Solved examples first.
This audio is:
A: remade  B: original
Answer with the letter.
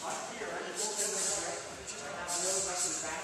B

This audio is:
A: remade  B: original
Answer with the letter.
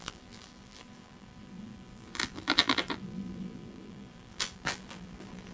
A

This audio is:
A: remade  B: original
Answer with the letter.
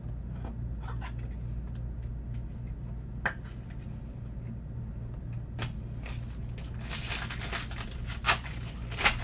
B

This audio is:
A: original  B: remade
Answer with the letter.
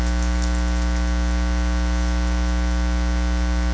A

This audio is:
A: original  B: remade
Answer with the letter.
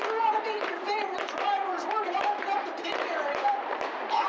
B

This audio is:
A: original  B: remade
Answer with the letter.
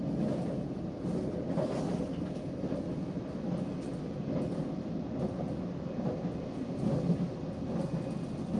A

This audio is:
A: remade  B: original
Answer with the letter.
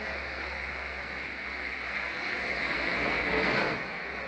A